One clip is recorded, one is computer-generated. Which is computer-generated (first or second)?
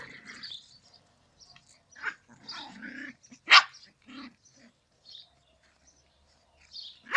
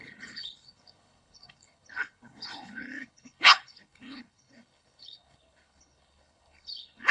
second